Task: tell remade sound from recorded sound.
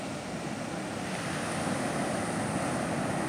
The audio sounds recorded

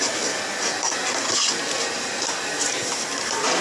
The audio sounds recorded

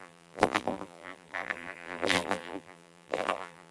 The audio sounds remade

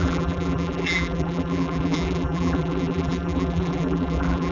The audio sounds remade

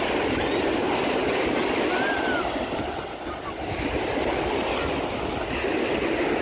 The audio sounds recorded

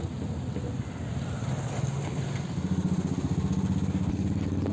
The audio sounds recorded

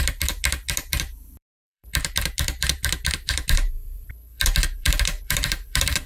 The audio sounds remade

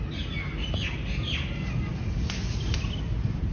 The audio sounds recorded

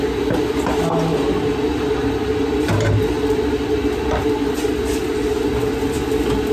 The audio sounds recorded